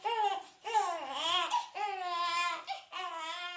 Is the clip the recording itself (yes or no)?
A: yes